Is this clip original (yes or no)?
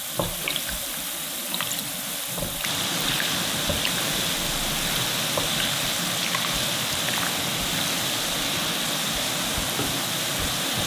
yes